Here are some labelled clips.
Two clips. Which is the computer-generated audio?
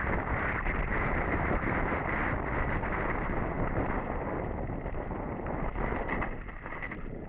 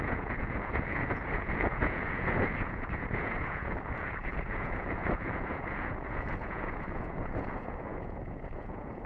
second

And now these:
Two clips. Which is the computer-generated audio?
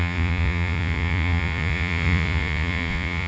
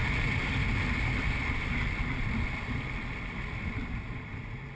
first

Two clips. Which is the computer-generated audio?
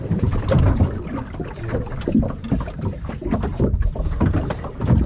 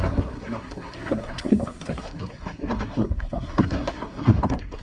second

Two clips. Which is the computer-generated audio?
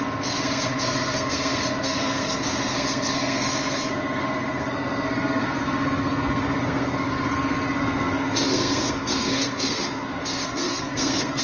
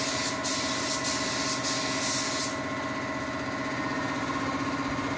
first